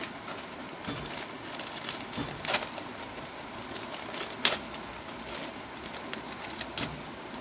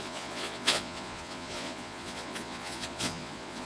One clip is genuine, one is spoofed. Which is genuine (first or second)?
first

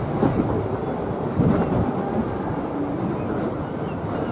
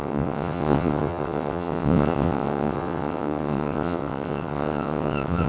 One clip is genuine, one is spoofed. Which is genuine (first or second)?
first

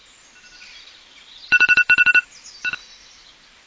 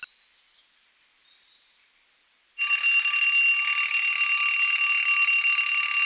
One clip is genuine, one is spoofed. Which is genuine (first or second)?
second